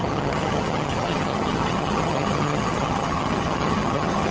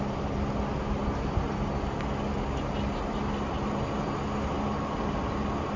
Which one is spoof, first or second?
first